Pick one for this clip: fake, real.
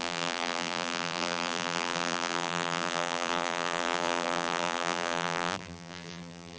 fake